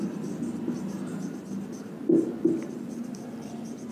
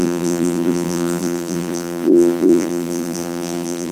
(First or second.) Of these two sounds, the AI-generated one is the second